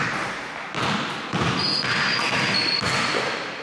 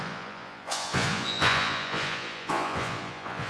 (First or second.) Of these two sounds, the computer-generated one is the second